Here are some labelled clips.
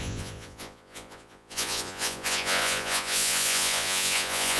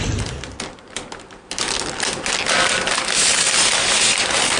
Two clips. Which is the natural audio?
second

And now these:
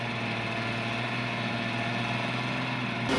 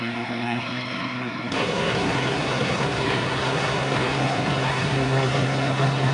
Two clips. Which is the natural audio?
first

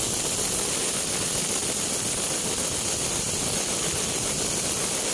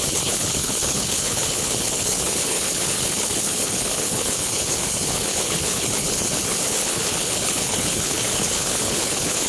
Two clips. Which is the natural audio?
first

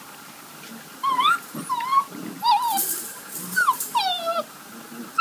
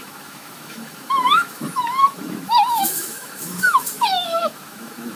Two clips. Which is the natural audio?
first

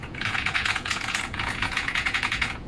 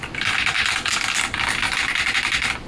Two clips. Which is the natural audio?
second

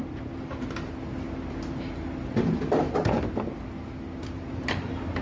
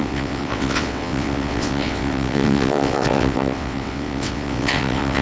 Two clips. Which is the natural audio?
first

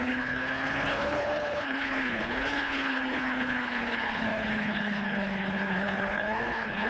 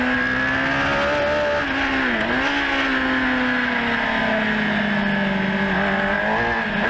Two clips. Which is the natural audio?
second